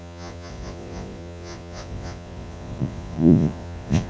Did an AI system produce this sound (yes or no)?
yes